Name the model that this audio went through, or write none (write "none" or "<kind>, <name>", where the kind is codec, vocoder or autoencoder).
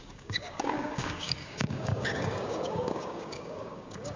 codec, DAC